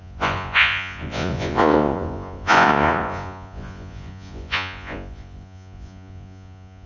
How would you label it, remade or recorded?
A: remade